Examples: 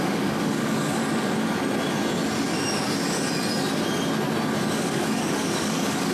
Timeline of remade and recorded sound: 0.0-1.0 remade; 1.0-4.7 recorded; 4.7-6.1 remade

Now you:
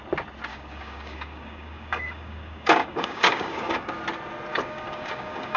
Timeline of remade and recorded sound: 0.0-0.5 recorded; 0.5-3.9 remade; 3.9-4.5 recorded; 4.5-5.6 remade